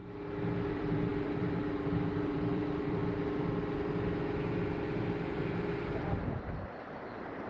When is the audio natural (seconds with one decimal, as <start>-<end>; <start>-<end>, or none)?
0.0-0.7; 3.0-5.4